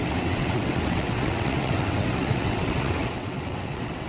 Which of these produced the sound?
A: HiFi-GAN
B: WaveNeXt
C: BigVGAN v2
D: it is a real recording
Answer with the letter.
B